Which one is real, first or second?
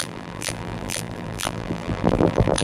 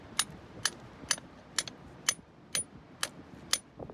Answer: second